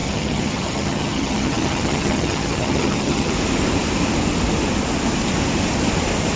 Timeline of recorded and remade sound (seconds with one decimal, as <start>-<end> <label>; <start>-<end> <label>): 0.0-3.3 remade; 3.3-6.4 recorded